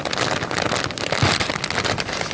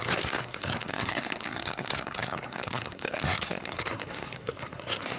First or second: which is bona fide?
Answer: first